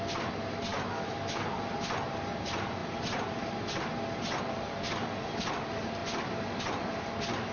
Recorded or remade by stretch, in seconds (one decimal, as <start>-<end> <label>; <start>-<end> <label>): 0.0-0.7 recorded; 0.7-1.4 remade; 1.4-7.5 recorded